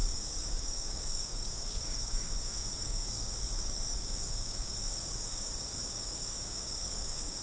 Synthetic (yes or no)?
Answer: yes